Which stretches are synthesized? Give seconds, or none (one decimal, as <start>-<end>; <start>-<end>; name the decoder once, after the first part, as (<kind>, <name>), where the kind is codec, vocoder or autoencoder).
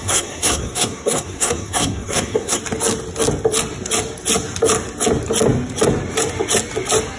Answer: 0.0-2.6 (codec, SNAC)